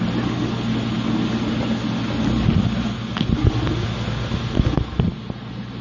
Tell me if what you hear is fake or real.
real